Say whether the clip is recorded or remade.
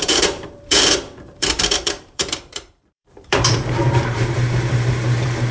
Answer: remade